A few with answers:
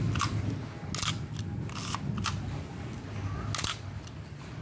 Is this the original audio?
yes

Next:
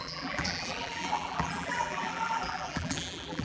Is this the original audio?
no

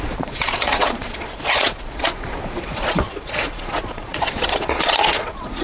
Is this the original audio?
no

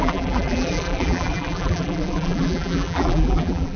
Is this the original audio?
no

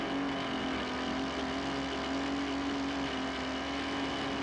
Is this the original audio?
yes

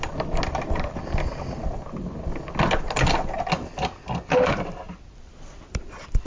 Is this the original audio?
yes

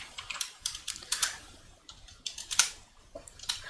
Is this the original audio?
no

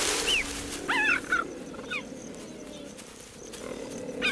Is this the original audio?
yes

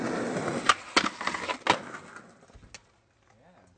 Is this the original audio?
yes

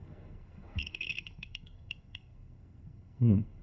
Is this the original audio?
no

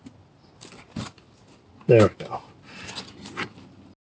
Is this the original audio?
yes